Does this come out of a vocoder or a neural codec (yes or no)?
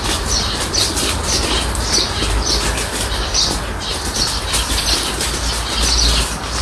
no